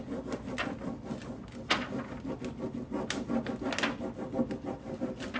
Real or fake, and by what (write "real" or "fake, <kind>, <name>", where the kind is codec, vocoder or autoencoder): real